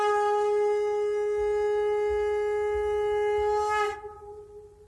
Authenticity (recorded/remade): recorded